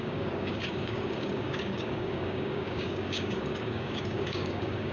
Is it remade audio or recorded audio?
remade